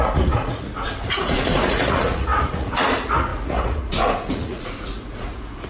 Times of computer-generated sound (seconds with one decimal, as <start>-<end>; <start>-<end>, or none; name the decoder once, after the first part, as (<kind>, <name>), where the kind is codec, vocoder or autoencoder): 0.0-5.7 (vocoder, Vocos)